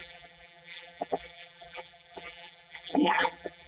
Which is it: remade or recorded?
remade